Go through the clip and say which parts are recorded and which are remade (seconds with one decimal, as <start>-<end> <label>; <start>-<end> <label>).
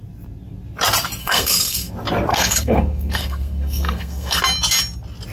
0.0-1.2 recorded; 1.2-1.9 remade; 1.9-2.3 recorded; 2.3-4.4 remade; 4.4-5.3 recorded